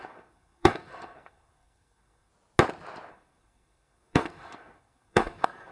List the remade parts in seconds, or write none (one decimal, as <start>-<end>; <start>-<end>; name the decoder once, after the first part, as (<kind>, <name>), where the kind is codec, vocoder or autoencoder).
0.0-2.3 (codec, SNAC); 3.1-5.7